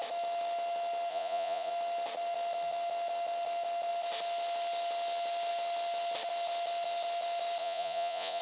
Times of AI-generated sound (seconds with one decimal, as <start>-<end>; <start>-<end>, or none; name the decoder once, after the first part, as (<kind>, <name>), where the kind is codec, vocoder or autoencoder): 1.1-1.7 (vocoder, Vocos); 7.6-8.4